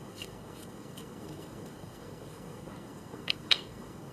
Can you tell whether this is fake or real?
fake